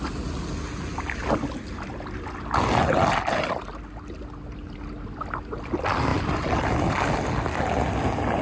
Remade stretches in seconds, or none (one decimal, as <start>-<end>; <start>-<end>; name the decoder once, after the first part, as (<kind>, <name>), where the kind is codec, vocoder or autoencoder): none